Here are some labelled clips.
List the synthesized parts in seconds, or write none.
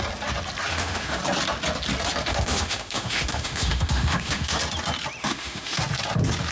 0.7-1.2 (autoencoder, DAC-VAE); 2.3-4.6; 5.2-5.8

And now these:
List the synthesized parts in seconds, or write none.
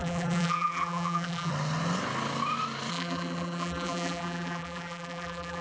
0.0-1.5 (vocoder, BigVGAN v2); 2.9-5.6